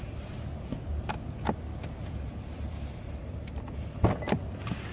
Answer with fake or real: real